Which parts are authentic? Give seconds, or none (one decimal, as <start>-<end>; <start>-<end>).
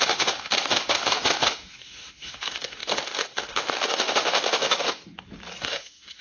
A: 5.0-5.6